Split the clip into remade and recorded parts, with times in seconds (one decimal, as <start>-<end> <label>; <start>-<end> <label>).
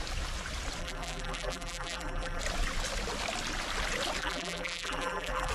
0.0-0.8 recorded; 0.8-2.4 remade; 2.4-4.2 recorded; 4.2-5.5 remade